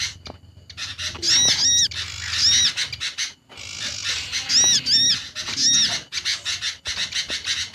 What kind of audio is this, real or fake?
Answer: real